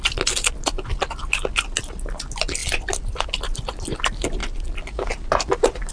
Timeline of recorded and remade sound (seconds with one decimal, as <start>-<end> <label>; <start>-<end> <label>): 0.0-5.9 recorded